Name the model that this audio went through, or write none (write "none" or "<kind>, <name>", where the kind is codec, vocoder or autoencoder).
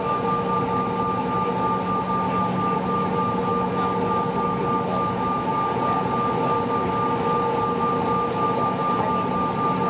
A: none